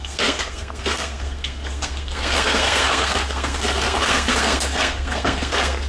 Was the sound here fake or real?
fake